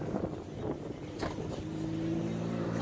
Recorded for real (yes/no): yes